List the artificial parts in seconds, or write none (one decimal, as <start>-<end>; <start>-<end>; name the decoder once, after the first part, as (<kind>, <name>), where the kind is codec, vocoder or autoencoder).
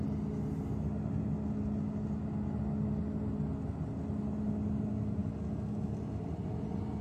none